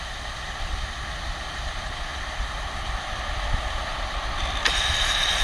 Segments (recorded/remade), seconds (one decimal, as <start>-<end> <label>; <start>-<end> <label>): 0.0-2.1 remade; 2.1-3.3 recorded; 3.3-5.4 remade